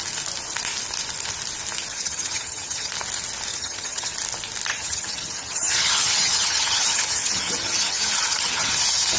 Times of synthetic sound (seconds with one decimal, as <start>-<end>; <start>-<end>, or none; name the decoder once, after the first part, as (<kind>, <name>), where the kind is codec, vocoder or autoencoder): 1.9-2.9 (vocoder, HiFi-GAN); 3.5-4.1; 4.7-8.7